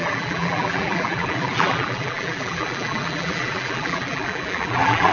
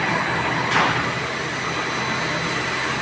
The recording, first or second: second